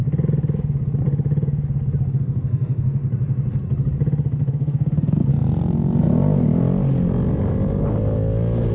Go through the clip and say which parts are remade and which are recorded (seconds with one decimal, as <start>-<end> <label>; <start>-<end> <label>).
0.0-2.2 recorded; 2.2-3.0 remade; 3.0-4.5 recorded; 4.5-5.3 remade; 5.3-8.7 recorded